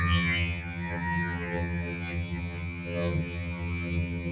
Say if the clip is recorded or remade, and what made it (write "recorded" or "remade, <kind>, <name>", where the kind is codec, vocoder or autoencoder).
remade, vocoder, HiFi-GAN